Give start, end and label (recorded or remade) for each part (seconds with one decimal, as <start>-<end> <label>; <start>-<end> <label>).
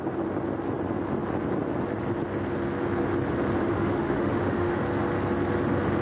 0.0-3.6 recorded; 3.6-4.7 remade; 4.7-6.0 recorded